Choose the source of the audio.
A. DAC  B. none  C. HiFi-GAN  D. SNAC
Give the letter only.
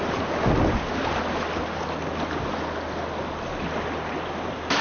B